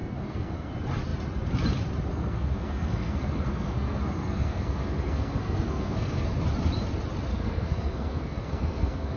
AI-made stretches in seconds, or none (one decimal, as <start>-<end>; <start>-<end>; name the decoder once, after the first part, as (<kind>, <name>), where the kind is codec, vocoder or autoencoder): 0.0-0.7 (codec, SNAC); 2.1-6.3; 7.3-9.2